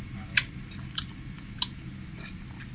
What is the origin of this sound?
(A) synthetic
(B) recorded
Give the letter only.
B